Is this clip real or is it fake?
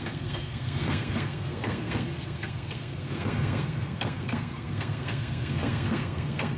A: fake